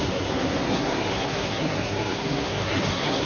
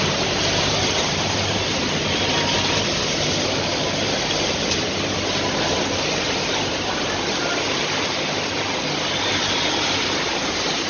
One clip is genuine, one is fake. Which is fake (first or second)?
first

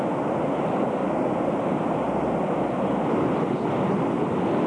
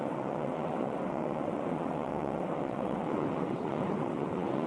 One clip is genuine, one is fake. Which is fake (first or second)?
second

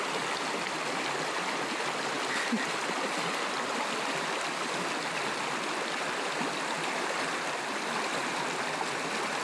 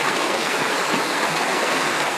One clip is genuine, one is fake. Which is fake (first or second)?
second